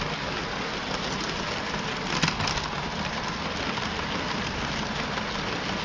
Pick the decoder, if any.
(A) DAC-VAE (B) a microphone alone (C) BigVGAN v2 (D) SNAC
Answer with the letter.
B